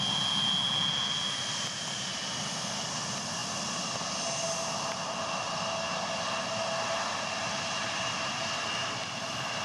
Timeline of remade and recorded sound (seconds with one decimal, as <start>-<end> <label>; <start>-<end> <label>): 0.0-9.6 recorded